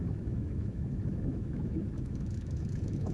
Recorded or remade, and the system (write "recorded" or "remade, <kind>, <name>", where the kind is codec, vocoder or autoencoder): remade, autoencoder, DAC-VAE